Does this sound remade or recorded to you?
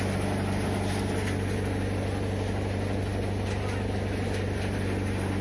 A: recorded